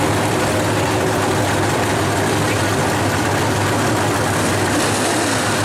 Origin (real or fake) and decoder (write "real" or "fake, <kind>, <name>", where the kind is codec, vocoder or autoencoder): real